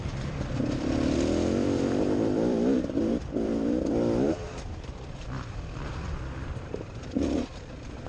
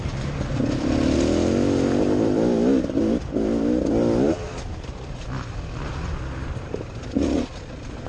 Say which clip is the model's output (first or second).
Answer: first